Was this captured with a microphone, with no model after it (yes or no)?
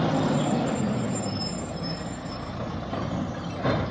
yes